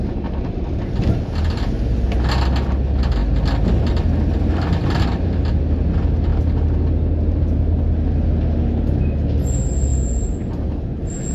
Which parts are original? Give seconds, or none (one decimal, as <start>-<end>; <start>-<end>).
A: 0.0-11.3